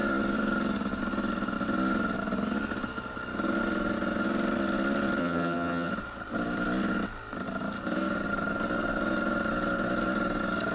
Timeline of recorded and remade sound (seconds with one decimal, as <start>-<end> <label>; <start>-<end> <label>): 0.0-5.2 recorded; 5.2-5.9 remade; 5.9-10.7 recorded